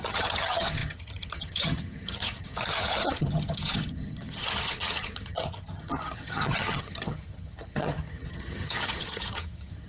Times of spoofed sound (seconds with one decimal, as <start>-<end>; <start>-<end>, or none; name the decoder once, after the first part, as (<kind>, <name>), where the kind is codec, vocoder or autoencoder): 0.0-9.9 (vocoder, HiFi-GAN)